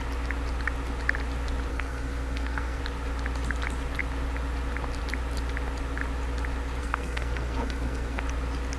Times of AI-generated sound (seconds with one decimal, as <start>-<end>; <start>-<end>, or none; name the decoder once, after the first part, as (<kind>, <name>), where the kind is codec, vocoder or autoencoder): 1.7-2.8 (codec, SNAC); 6.8-8.2